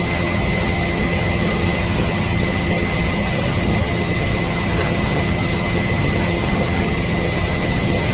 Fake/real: fake